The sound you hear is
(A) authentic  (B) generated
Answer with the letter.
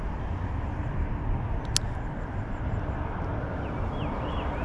A